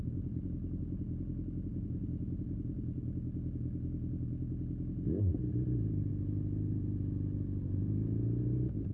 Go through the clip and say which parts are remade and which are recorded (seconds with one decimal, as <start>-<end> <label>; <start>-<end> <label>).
0.0-8.9 recorded